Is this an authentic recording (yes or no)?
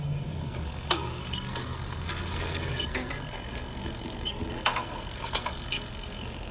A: no